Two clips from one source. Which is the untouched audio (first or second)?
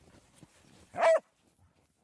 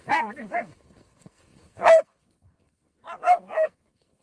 first